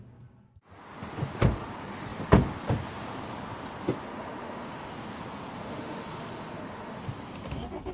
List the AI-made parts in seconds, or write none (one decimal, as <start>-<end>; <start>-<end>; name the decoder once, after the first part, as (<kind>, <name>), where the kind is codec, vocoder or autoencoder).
4.1-4.9 (autoencoder, DAC-VAE); 5.6-7.0